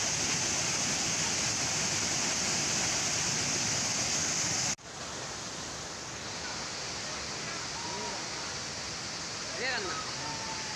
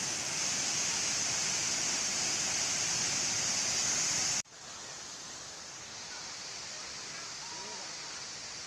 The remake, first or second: second